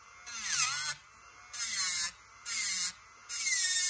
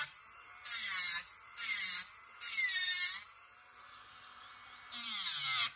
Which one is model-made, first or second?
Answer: second